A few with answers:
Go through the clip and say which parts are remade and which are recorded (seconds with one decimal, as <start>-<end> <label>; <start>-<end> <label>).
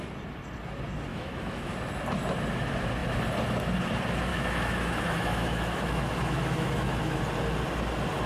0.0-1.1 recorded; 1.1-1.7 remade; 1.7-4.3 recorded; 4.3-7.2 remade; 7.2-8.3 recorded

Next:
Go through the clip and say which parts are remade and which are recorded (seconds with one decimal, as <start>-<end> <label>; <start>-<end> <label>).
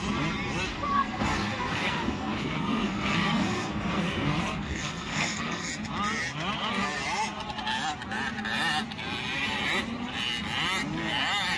0.0-0.7 recorded; 0.7-5.7 remade; 5.7-11.6 recorded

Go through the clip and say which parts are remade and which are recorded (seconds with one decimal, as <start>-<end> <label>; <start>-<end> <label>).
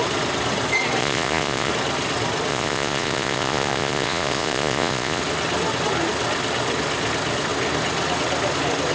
0.0-1.0 recorded; 1.0-1.7 remade; 1.7-2.5 recorded; 2.5-5.2 remade; 5.2-8.9 recorded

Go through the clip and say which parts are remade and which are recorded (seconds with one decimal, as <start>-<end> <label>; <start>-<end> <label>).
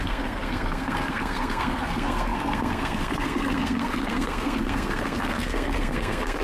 0.0-6.4 remade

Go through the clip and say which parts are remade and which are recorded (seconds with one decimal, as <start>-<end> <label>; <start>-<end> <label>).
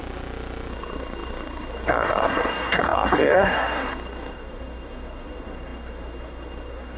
0.0-0.7 recorded; 0.7-7.0 remade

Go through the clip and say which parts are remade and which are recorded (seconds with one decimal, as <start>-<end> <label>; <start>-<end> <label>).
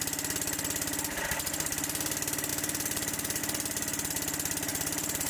0.0-2.5 recorded; 2.5-3.4 remade; 3.4-4.7 recorded; 4.7-5.3 remade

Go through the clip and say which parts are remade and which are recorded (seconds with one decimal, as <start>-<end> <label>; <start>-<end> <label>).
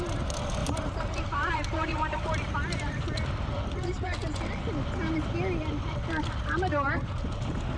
0.0-0.6 recorded; 0.6-3.0 remade; 3.0-7.8 recorded